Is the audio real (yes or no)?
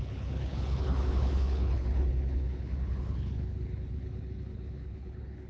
no